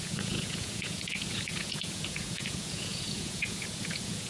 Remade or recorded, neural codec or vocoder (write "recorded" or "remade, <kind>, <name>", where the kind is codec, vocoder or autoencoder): remade, vocoder, Vocos